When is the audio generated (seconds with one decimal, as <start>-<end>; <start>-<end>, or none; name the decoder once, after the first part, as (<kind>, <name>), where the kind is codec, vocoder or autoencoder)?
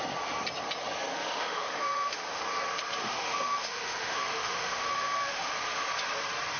1.1-2.4 (autoencoder, DAC-VAE); 3.0-5.5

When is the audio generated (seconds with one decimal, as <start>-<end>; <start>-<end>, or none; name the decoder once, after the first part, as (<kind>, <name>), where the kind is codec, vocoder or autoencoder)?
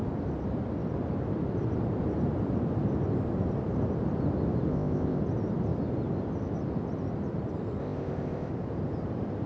4.7-5.2 (codec, ZipCodec); 7.8-8.5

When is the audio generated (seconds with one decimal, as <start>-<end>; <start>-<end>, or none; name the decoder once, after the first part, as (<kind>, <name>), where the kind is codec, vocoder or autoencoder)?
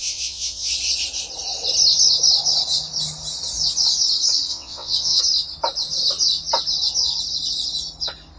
0.0-0.7 (vocoder, WaveNeXt); 4.5-5.2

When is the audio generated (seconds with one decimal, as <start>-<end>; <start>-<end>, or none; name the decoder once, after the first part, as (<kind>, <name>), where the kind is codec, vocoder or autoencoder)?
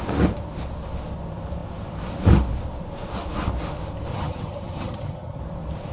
4.1-5.4 (vocoder, HiFi-GAN)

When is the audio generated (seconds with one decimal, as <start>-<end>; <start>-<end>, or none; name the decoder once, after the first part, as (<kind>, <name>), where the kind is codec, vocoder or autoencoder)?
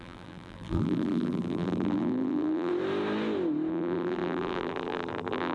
0.0-2.7 (vocoder, BigVGAN v2); 3.7-5.5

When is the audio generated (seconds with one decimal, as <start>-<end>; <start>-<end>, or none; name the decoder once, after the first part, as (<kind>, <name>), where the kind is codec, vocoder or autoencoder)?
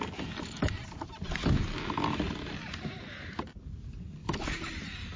2.6-3.5 (vocoder, BigVGAN v2); 4.2-4.8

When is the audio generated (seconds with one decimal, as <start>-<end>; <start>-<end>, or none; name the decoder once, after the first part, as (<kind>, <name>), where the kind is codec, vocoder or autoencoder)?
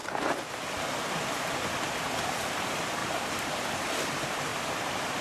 1.7-3.0 (vocoder, BigVGAN v2); 3.6-4.5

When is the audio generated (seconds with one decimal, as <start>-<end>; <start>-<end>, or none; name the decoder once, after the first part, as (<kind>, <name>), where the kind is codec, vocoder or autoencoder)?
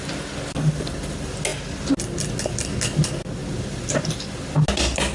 none